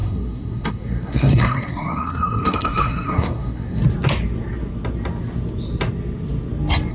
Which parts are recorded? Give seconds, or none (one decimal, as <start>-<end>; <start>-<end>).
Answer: 3.8-6.9